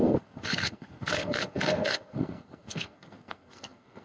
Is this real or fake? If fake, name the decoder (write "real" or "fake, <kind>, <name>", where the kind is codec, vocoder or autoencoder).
fake, codec, SNAC